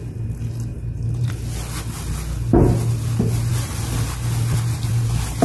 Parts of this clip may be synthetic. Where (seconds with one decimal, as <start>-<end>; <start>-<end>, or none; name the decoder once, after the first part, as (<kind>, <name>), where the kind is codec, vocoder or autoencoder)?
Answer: 0.7-1.3 (vocoder, BigVGAN v2)